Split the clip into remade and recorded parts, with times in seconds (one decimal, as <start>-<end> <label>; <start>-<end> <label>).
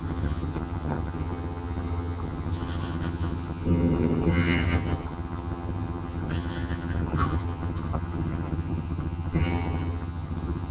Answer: 0.0-10.7 remade